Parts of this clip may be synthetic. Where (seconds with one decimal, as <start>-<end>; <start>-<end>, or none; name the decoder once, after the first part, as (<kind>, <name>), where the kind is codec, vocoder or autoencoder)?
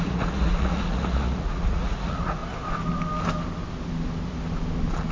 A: 0.0-2.4 (vocoder, Vocos)